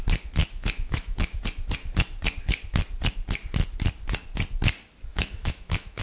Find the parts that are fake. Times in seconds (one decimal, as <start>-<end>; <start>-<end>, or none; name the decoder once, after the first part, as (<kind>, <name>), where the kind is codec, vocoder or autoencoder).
0.4-1.4 (autoencoder, DAC-VAE); 5.1-6.0